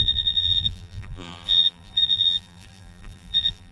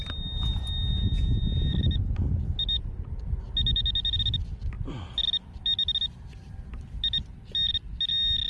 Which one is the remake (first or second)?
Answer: first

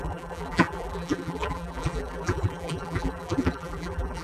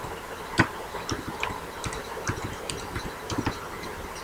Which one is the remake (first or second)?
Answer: first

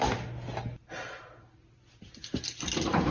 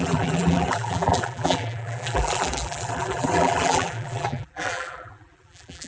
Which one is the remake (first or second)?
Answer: second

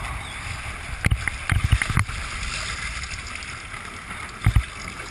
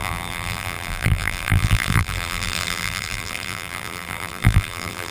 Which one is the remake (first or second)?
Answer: second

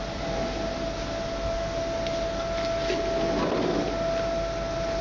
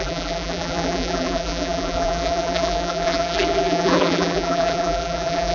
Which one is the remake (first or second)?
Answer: second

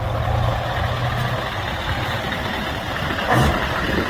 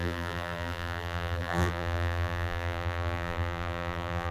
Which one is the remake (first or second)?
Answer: second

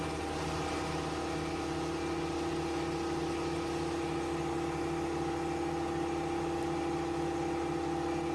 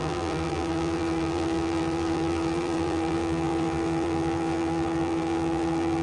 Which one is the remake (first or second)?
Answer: second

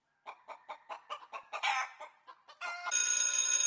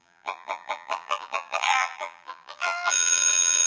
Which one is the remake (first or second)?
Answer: second